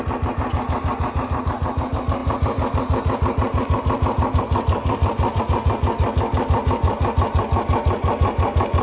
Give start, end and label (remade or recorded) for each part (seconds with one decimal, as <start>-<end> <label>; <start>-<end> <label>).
0.0-2.2 recorded; 2.2-5.4 remade; 5.4-8.8 recorded